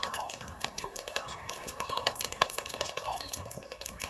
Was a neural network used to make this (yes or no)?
yes